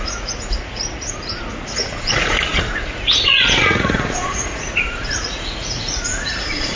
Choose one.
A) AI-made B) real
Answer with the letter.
A